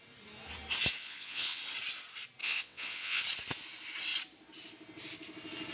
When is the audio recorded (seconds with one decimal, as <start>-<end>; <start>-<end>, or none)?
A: 0.0-1.0; 1.6-2.4; 3.2-5.7